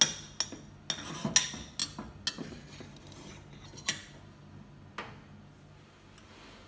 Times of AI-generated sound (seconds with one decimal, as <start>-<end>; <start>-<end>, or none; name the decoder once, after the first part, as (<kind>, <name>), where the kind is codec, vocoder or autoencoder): none